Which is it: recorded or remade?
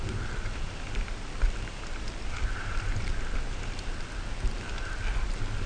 recorded